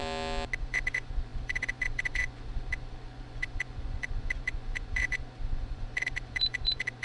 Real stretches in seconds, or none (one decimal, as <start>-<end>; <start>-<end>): 0.0-0.6